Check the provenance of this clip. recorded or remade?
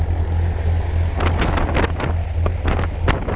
recorded